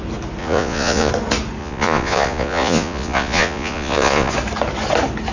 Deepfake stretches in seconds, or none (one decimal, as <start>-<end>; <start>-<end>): 0.4-1.1; 1.6-4.3